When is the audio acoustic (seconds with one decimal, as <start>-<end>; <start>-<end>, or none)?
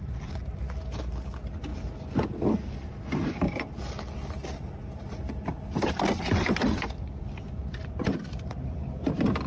0.0-9.5